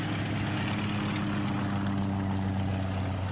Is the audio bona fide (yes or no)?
yes